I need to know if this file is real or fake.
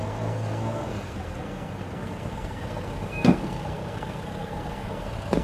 fake